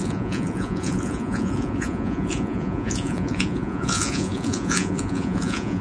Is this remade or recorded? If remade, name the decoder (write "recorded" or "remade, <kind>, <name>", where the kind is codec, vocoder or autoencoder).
remade, vocoder, Vocos